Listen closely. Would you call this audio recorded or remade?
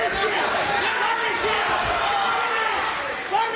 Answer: recorded